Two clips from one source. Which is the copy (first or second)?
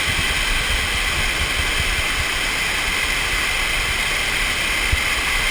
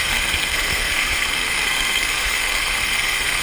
second